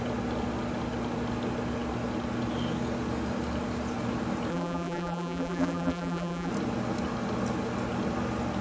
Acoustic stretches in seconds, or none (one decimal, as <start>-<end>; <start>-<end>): 0.0-4.5; 6.5-8.6